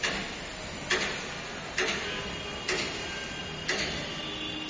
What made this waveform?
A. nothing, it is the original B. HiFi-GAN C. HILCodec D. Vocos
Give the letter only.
A